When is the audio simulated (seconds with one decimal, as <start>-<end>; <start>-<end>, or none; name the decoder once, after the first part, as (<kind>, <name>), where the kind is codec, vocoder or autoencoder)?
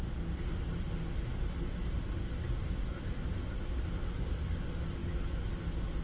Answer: none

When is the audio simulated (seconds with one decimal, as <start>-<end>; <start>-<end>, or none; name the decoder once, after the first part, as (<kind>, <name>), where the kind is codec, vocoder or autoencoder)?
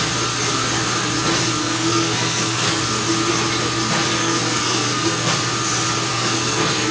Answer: 1.6-2.8 (codec, SNAC); 4.2-5.3; 6.1-6.9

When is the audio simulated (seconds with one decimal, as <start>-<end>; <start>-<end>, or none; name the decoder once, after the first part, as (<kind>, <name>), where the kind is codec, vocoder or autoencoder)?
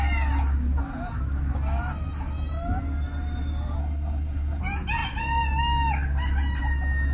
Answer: 3.8-4.6 (codec, SNAC)